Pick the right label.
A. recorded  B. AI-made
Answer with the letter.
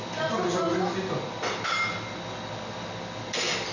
A